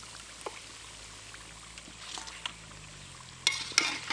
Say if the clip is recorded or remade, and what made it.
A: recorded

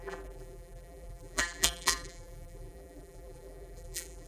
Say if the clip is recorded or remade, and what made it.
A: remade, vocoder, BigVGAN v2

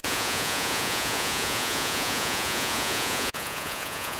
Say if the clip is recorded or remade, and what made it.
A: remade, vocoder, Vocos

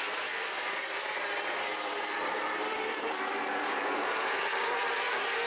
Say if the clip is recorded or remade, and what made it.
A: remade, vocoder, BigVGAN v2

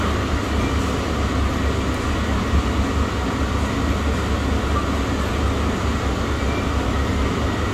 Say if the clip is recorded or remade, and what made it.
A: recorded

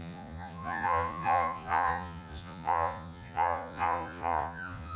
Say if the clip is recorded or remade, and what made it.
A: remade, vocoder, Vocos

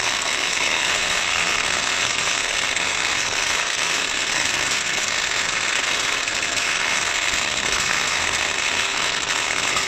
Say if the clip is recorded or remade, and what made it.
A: remade, codec, SNAC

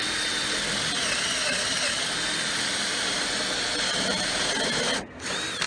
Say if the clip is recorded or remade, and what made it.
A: recorded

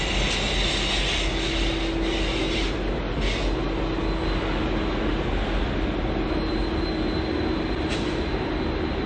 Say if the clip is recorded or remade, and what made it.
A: recorded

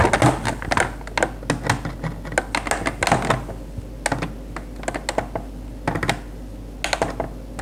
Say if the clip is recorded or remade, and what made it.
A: recorded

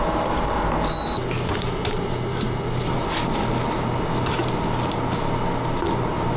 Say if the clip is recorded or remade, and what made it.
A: recorded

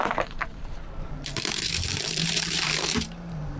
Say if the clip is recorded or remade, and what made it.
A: remade, vocoder, BigVGAN v2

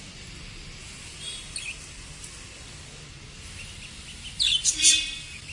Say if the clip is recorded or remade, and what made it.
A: recorded